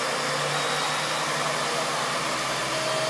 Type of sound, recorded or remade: recorded